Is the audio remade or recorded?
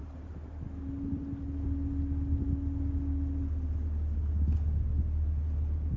recorded